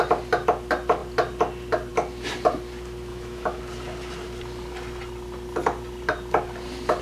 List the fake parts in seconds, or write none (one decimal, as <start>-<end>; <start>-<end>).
3.1-3.6